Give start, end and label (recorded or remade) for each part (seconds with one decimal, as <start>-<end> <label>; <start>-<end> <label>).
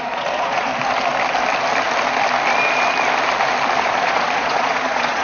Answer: 0.0-0.7 remade; 0.7-3.8 recorded; 3.8-5.2 remade